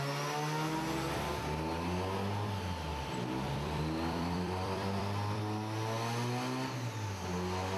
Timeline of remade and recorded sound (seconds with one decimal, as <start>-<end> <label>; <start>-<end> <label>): 0.0-2.9 recorded; 2.9-5.4 remade; 5.4-7.8 recorded

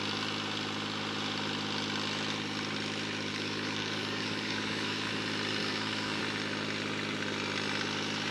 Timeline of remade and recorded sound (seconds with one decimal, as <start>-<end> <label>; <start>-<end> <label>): 0.0-3.3 recorded; 3.3-5.1 remade; 5.1-5.6 recorded; 5.6-6.2 remade; 6.2-8.3 recorded